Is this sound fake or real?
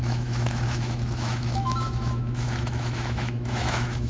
fake